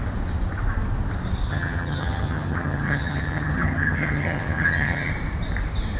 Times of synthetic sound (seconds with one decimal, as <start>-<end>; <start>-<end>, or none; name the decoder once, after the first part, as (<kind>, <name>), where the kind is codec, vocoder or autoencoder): 1.5-5.1 (vocoder, HiFi-GAN)